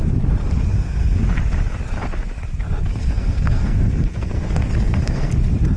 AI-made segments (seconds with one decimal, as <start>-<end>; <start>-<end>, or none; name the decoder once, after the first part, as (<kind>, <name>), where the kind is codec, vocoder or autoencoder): 0.7-1.2 (codec, SNAC); 2.9-5.3